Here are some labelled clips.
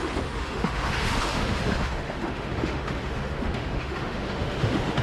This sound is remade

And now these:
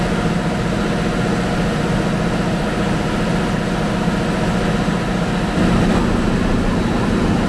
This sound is recorded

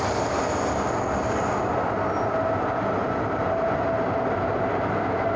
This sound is recorded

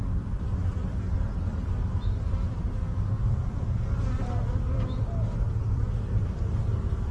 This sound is recorded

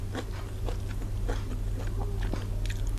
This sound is recorded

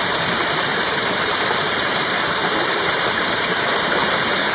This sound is remade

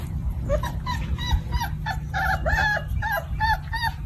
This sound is recorded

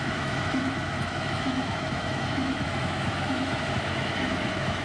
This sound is remade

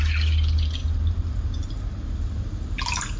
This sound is recorded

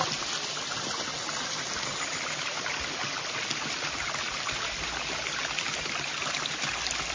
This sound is recorded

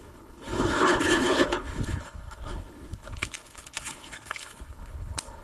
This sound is remade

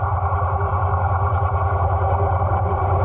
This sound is recorded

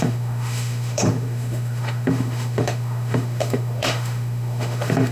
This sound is remade